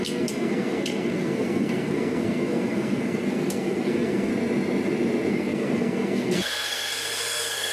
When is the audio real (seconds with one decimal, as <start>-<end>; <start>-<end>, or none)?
4.3-5.3